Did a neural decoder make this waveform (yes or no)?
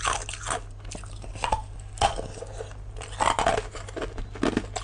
no